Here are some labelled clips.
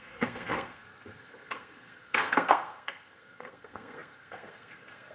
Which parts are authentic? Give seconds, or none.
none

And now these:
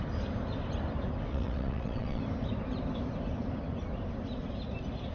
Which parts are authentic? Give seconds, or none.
0.0-1.3; 2.2-5.1